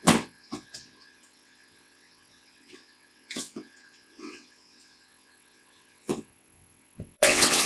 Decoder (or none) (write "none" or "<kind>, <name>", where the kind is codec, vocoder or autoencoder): vocoder, WaveNeXt